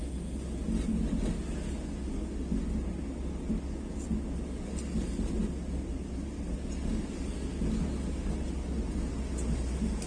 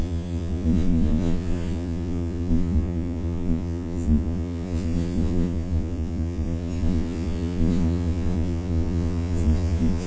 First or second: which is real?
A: first